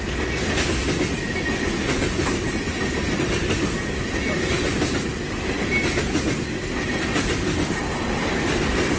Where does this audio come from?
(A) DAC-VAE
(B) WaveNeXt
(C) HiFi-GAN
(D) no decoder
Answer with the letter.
D